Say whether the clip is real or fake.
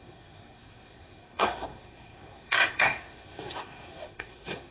fake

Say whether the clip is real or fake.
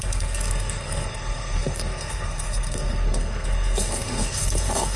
fake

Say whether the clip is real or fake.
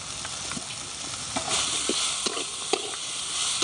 real